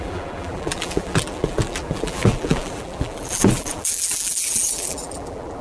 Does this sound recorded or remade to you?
remade